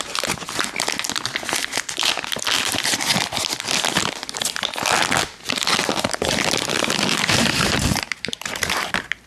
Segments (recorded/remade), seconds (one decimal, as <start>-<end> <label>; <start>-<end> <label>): 0.0-7.2 recorded; 7.2-8.9 remade; 8.9-9.3 recorded